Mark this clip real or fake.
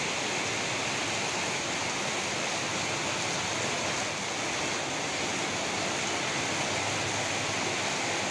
real